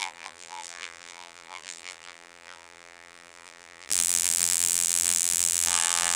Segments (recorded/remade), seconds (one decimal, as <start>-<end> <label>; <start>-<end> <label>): 0.0-6.2 remade